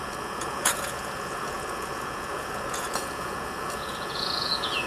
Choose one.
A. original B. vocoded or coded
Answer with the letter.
B